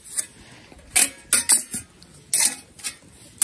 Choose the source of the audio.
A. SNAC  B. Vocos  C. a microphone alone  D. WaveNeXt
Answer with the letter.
C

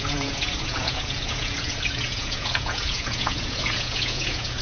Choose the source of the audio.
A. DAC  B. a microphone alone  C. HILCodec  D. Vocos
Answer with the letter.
D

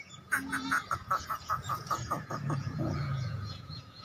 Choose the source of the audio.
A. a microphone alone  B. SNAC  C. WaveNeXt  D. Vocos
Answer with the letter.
D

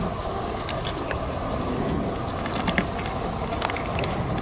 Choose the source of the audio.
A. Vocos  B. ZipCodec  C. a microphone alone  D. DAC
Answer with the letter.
C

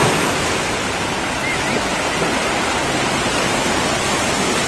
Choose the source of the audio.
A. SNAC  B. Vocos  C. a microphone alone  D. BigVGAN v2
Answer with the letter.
C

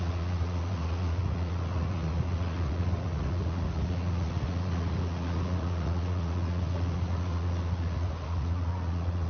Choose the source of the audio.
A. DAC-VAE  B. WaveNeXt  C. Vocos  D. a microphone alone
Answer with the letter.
C